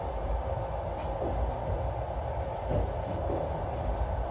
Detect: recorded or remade recorded